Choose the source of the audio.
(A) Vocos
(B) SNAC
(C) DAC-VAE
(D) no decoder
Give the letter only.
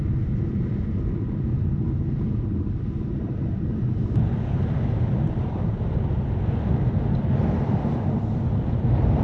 D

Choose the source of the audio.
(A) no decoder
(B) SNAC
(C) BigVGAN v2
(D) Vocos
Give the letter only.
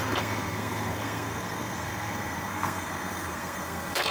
B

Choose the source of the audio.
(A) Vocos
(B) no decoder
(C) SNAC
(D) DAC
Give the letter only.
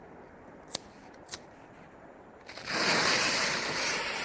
B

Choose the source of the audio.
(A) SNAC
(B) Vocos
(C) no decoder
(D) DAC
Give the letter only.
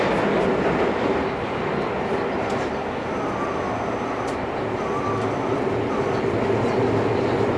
C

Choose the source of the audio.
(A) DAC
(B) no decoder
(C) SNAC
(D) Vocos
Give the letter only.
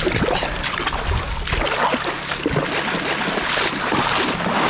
B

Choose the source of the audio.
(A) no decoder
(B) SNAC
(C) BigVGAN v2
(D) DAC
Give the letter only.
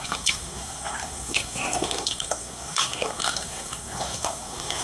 B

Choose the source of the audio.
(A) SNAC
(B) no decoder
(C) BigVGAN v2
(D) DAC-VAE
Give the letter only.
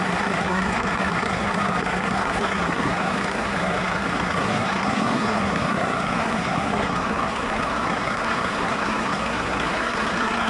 A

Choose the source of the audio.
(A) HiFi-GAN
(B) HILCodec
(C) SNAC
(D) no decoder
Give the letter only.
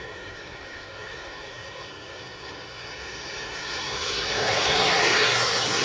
C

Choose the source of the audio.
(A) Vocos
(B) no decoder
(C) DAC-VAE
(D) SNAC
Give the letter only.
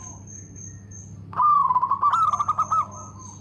B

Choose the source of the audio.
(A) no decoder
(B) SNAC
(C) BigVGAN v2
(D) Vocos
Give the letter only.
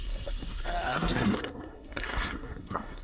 B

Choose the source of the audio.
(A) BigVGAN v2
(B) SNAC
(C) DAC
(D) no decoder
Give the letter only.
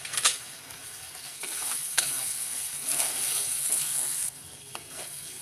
B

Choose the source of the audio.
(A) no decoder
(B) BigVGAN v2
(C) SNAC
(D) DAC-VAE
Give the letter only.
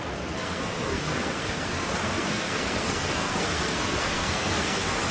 C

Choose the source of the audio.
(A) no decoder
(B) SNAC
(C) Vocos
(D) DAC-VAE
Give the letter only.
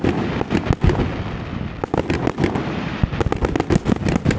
A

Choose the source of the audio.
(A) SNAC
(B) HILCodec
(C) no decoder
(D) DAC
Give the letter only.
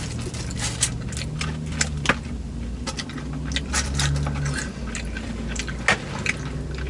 C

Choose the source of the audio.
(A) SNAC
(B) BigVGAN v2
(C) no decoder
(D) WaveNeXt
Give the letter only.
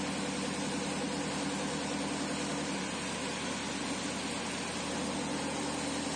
C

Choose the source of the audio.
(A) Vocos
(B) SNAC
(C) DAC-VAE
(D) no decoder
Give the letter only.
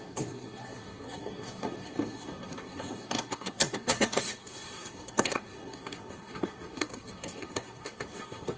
B